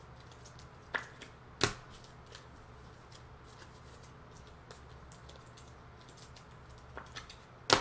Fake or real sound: real